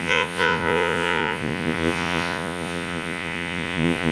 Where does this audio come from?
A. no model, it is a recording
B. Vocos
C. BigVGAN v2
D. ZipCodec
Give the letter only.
B